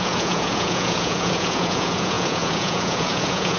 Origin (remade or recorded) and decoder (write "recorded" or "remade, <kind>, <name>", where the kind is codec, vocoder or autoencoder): remade, vocoder, Vocos